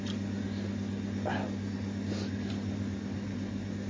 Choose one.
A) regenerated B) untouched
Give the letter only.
B